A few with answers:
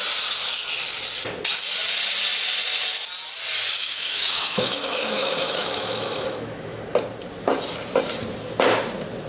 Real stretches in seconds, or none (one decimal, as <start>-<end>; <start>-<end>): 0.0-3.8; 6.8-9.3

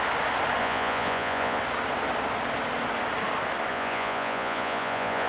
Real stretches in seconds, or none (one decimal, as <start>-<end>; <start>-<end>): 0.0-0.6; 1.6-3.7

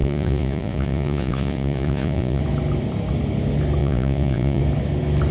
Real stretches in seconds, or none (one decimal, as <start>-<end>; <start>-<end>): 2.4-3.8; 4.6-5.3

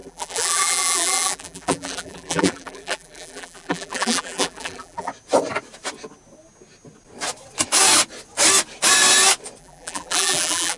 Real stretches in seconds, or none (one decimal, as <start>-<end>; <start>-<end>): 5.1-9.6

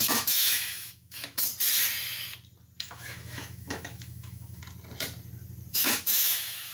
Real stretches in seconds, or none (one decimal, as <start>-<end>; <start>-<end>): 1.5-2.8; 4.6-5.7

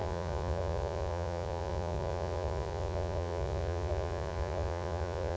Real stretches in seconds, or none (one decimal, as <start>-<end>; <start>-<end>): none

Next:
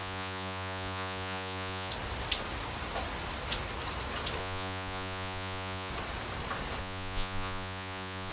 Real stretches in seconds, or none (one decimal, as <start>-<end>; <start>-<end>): 1.9-4.4; 5.9-6.8

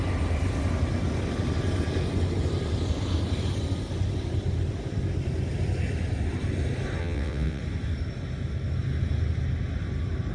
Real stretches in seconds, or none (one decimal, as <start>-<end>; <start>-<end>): 0.0-7.0; 7.6-10.3